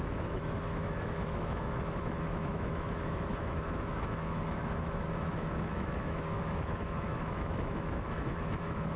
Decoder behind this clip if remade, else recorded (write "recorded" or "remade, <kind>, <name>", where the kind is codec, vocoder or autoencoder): remade, autoencoder, DAC-VAE